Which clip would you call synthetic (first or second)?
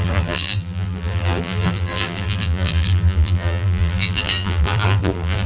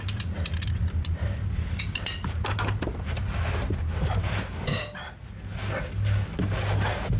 first